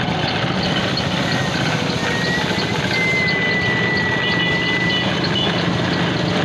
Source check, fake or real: real